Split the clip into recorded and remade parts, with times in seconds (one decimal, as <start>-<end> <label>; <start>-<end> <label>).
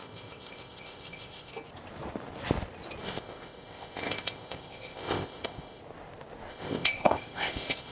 0.0-1.5 remade; 1.5-3.0 recorded; 3.0-5.8 remade; 5.8-6.5 recorded; 6.5-7.9 remade